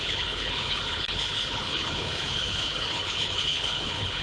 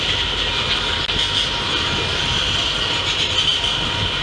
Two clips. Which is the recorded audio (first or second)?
second